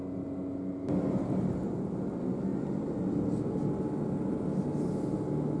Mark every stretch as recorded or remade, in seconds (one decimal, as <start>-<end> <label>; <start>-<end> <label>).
0.0-2.5 recorded; 2.5-3.0 remade; 3.0-5.6 recorded

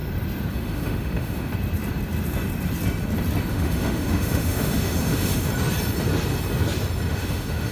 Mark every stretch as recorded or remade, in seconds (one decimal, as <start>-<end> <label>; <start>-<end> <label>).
0.0-0.5 recorded; 0.5-1.5 remade; 1.5-3.5 recorded; 3.5-5.5 remade; 5.5-7.1 recorded; 7.1-7.7 remade

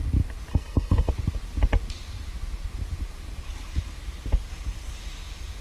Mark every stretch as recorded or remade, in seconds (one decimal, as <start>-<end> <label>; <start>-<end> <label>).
0.0-0.5 recorded; 0.5-1.1 remade; 1.1-5.6 recorded

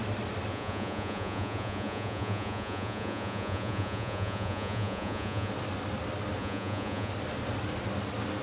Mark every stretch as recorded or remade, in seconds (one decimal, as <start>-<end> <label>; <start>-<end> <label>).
0.0-0.5 recorded; 0.5-5.5 remade; 5.5-6.4 recorded; 6.4-7.1 remade; 7.1-8.4 recorded

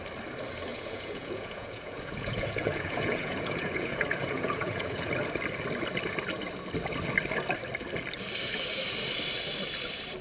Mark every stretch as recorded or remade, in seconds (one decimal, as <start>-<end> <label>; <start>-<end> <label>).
0.0-0.7 recorded; 0.7-5.1 remade; 5.1-10.2 recorded

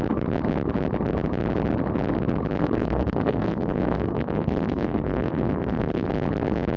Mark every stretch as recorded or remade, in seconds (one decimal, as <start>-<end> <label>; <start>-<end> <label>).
0.0-2.6 recorded; 2.6-6.1 remade; 6.1-6.8 recorded